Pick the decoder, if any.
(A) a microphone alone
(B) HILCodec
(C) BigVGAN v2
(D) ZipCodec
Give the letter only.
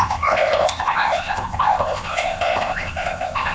D